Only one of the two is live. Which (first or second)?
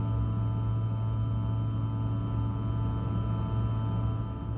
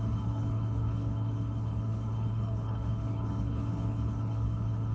first